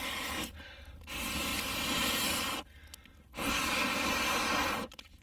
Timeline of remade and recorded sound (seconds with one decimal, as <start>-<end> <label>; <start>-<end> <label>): 0.0-5.2 recorded